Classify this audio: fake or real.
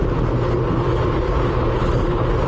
real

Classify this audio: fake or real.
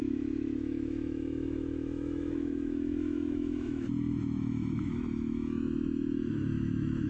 fake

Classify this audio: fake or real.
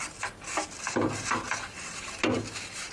real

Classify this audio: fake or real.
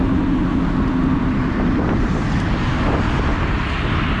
real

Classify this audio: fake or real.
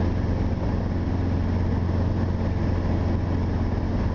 real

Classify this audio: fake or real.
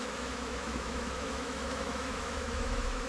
fake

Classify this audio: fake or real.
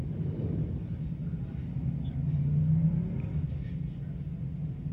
real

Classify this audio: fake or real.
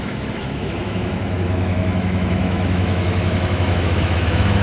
fake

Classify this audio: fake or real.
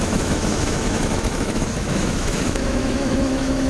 fake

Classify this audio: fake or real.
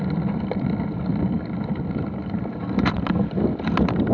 real